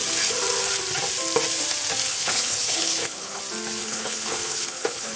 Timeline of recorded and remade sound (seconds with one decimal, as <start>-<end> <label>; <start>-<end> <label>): 0.0-2.1 recorded; 2.1-3.4 remade; 3.4-3.8 recorded; 3.8-5.2 remade